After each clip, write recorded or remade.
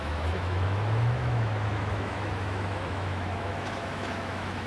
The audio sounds remade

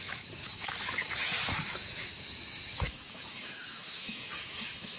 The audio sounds remade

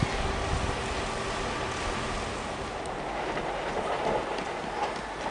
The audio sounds recorded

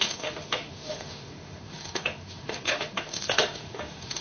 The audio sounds remade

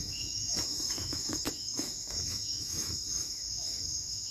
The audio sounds remade